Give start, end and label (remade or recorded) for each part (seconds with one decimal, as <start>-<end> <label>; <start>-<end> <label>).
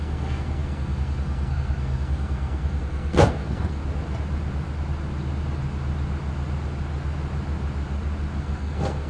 0.0-3.8 remade; 3.8-8.4 recorded; 8.4-9.1 remade